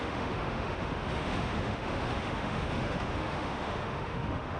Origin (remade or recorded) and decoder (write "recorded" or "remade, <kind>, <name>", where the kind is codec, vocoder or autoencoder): remade, autoencoder, DAC-VAE